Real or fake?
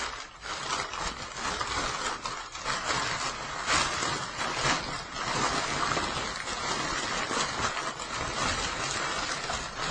real